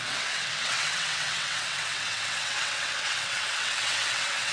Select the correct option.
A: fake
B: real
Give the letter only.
A